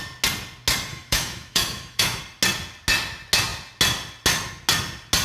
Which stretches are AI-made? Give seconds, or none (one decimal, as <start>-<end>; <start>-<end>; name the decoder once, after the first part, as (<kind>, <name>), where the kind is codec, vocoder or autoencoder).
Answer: 0.9-2.2 (autoencoder, DAC-VAE)